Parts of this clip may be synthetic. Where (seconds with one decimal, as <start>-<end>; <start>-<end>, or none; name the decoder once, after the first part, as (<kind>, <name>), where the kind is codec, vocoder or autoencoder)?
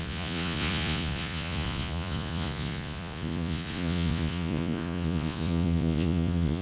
0.0-6.6 (vocoder, Vocos)